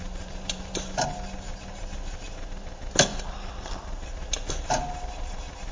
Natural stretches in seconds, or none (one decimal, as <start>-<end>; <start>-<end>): 0.0-5.7